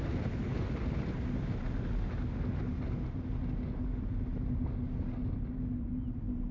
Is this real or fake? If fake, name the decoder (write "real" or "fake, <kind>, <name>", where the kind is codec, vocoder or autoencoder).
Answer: real